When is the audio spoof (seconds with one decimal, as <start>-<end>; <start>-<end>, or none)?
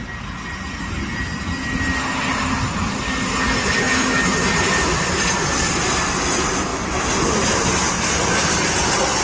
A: none